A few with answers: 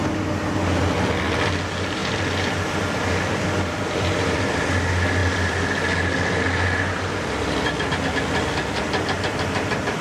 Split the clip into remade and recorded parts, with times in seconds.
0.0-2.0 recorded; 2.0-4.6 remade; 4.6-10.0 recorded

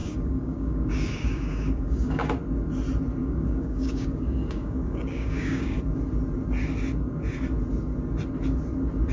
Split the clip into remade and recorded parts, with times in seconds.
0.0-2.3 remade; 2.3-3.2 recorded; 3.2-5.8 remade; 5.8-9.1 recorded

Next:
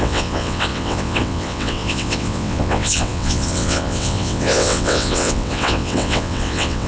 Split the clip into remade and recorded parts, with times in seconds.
0.0-6.9 remade

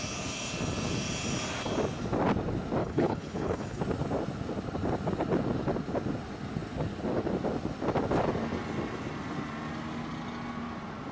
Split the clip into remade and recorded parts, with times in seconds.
0.0-2.8 recorded; 2.8-3.8 remade; 3.8-11.1 recorded

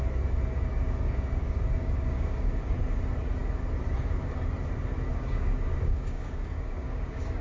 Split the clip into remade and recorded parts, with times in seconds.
0.0-0.7 recorded; 0.7-2.7 remade; 2.7-5.1 recorded; 5.1-7.4 remade

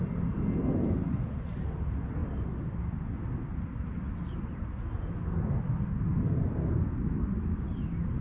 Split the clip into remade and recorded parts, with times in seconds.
0.0-8.2 recorded